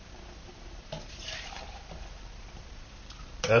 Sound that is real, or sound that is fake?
fake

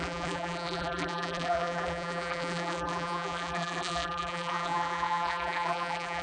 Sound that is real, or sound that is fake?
fake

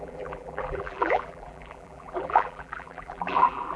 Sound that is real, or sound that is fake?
fake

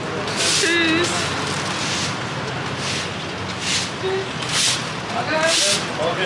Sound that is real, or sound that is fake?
real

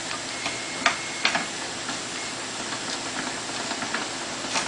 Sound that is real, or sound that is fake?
real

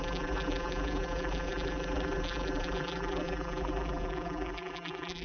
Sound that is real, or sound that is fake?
fake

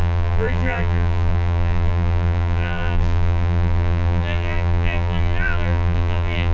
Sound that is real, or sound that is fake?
fake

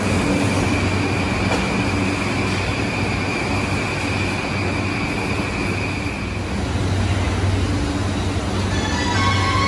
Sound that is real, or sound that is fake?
real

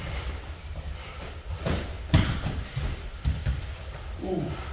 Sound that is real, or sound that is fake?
fake